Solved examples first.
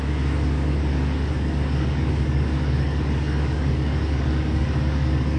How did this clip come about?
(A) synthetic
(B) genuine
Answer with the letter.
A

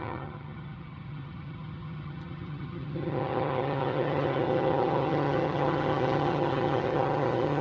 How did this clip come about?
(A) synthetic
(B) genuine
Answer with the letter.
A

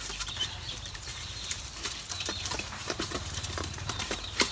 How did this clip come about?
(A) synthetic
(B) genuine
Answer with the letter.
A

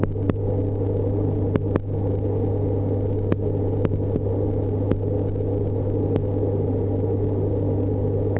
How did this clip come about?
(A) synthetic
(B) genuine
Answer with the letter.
B